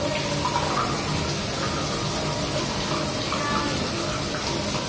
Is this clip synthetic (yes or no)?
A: no